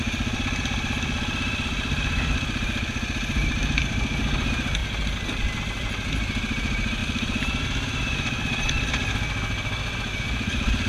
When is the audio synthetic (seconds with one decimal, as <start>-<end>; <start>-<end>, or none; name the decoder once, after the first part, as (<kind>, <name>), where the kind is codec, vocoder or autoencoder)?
7.0-7.6 (vocoder, BigVGAN v2); 8.0-8.7